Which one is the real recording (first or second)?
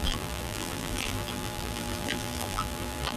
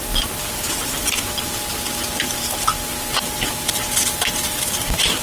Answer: second